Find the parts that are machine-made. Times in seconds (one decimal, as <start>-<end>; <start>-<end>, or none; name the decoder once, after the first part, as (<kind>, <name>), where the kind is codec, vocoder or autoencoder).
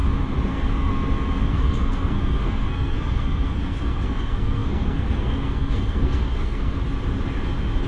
0.5-0.9 (codec, SNAC); 1.5-6.8